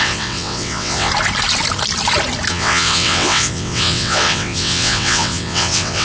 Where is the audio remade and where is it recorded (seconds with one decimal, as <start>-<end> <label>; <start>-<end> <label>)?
0.0-1.1 remade; 1.1-2.5 recorded; 2.5-6.0 remade